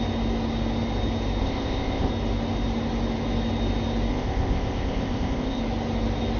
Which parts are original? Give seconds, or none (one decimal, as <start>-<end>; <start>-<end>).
0.0-1.4; 2.1-4.1; 5.6-6.4